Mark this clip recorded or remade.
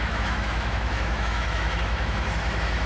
remade